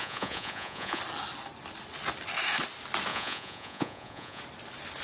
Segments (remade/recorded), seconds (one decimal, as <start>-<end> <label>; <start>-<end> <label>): 0.0-1.0 remade; 1.0-3.1 recorded; 3.1-4.4 remade; 4.4-5.0 recorded